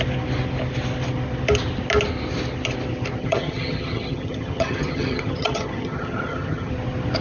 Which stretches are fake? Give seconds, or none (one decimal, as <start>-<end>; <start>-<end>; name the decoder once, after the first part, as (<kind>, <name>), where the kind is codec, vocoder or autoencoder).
3.2-6.7 (vocoder, HiFi-GAN)